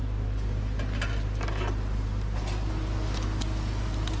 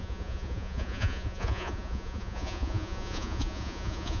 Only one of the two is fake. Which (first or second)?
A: second